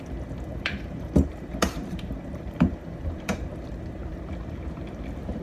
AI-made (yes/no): yes